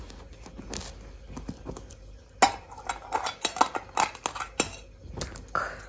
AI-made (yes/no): no